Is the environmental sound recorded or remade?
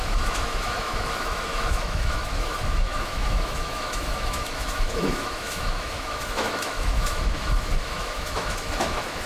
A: remade